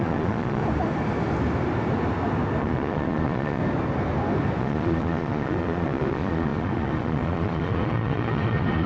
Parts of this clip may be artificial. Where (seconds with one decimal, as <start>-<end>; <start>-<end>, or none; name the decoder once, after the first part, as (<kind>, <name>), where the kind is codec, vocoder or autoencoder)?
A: 0.0-0.6 (vocoder, Vocos); 2.6-3.6; 4.6-8.9